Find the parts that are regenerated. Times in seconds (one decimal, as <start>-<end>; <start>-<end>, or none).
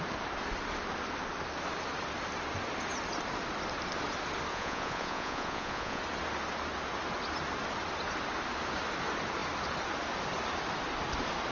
4.5-6.0